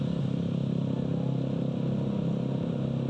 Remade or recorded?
recorded